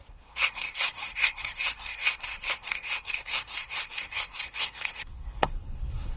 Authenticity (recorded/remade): remade